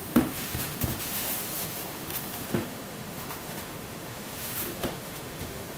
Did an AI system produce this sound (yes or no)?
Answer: yes